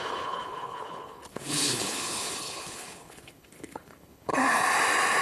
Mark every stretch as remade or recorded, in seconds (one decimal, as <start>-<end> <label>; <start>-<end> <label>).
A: 0.0-4.3 remade; 4.3-5.2 recorded